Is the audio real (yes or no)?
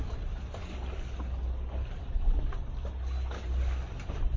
yes